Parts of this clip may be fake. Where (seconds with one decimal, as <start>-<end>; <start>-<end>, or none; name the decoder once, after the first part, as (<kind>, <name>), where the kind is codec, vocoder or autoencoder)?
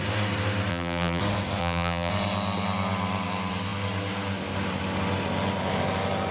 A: 0.7-1.2 (vocoder, BigVGAN v2); 1.6-2.1